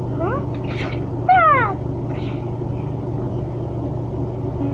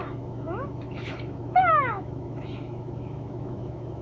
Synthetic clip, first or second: second